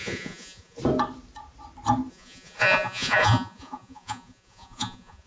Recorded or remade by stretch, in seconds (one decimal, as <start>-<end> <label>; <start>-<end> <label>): 0.0-0.8 remade; 0.8-2.1 recorded; 2.1-5.3 remade

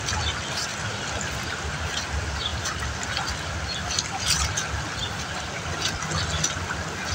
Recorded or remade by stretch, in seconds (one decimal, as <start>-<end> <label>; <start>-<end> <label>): 0.0-7.1 recorded

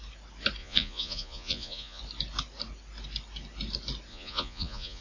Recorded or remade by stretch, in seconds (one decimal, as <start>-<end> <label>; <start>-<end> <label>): 0.0-0.6 recorded; 0.6-2.0 remade; 2.0-4.1 recorded; 4.1-5.0 remade

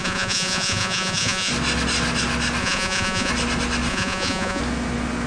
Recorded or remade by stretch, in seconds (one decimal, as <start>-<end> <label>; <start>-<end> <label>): 0.0-1.5 remade; 1.5-2.6 recorded; 2.6-3.3 remade; 3.3-3.9 recorded; 3.9-4.6 remade; 4.6-5.3 recorded

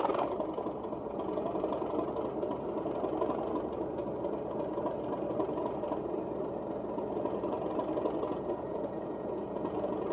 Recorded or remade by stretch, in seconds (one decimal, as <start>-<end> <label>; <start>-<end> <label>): 0.0-8.3 recorded; 8.3-10.1 remade

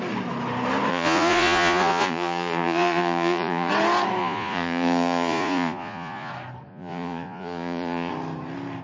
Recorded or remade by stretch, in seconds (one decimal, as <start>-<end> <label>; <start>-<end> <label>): 0.0-0.9 recorded; 0.9-3.7 remade; 3.7-4.2 recorded; 4.2-6.3 remade; 6.3-6.7 recorded; 6.7-8.1 remade; 8.1-8.8 recorded

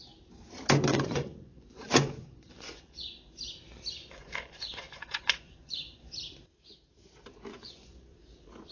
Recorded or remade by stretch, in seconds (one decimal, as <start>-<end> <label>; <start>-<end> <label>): 0.0-0.9 recorded; 0.9-3.3 remade; 3.3-4.0 recorded; 4.0-6.1 remade; 6.1-7.5 recorded; 7.5-8.1 remade; 8.1-8.7 recorded

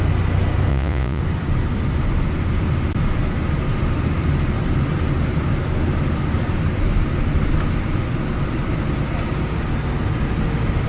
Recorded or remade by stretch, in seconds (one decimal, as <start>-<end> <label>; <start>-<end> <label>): 0.0-0.7 recorded; 0.7-1.2 remade; 1.2-10.9 recorded